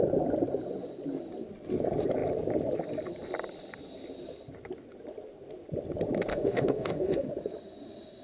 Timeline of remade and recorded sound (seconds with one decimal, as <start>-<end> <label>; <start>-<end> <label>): 0.0-6.3 recorded; 6.3-7.3 remade; 7.3-8.2 recorded

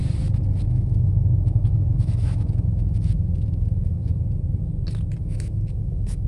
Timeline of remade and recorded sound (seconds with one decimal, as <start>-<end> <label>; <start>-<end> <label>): 0.0-0.6 recorded; 0.6-4.1 remade; 4.1-5.2 recorded; 5.2-6.3 remade

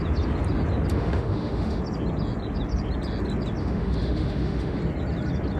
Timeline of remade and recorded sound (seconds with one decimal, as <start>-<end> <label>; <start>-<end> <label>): 0.0-0.9 recorded; 0.9-1.8 remade; 1.8-3.6 recorded; 3.6-4.8 remade; 4.8-5.6 recorded

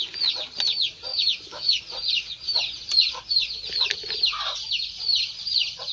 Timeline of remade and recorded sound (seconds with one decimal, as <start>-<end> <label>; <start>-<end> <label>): 0.0-1.1 recorded; 1.1-1.7 remade; 1.7-5.9 recorded

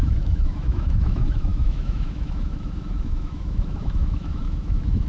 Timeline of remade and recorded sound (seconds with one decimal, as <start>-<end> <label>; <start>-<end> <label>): 0.0-5.1 remade

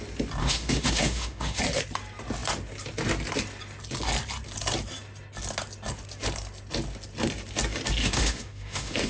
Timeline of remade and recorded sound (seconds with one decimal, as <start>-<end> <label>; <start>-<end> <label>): 0.0-0.4 recorded; 0.4-1.6 remade; 1.6-8.0 recorded; 8.0-9.1 remade

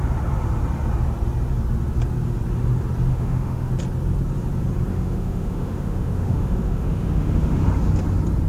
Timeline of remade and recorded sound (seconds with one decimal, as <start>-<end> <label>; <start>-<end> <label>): 0.0-3.1 recorded; 3.1-3.7 remade; 3.7-4.9 recorded; 4.9-7.6 remade; 7.6-8.5 recorded